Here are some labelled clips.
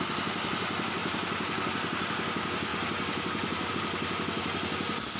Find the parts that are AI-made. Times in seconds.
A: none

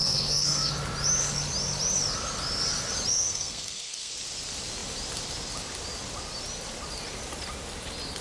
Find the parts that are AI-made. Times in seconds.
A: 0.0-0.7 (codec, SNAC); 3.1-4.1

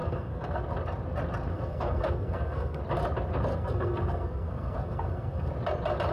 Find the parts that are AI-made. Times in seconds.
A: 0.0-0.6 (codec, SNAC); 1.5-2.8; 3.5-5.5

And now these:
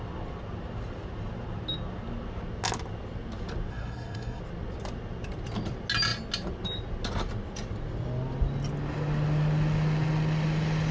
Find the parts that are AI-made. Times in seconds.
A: 3.7-4.4 (codec, SNAC)

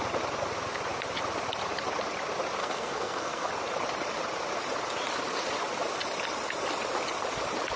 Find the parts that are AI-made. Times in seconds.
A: 2.6-3.5 (codec, SNAC)

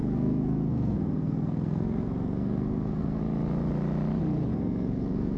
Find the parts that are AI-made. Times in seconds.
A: 0.0-3.2 (codec, SNAC); 4.5-5.4

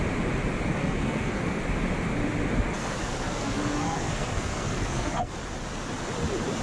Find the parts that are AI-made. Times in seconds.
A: 0.8-1.6 (codec, SNAC); 2.8-5.3